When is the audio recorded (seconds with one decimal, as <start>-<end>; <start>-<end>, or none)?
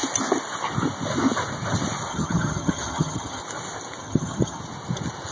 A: 0.0-2.1; 3.4-4.0; 4.6-5.3